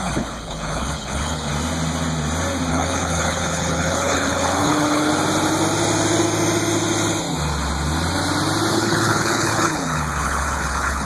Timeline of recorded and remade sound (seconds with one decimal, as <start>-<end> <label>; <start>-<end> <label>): 0.0-1.5 remade; 1.5-2.7 recorded; 2.7-5.1 remade; 5.1-8.7 recorded; 8.7-11.0 remade

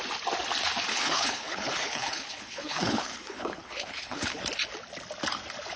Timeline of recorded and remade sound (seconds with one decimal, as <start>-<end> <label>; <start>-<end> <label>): 0.0-0.9 recorded; 0.9-4.4 remade; 4.4-5.8 recorded

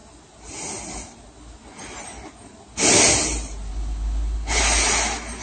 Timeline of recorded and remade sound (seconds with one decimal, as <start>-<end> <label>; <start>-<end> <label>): 0.0-3.7 recorded; 3.7-4.6 remade; 4.6-5.4 recorded

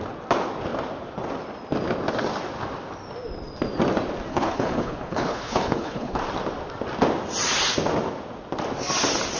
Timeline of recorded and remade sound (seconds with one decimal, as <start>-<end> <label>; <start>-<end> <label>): 0.0-4.3 recorded; 4.3-6.2 remade; 6.2-9.4 recorded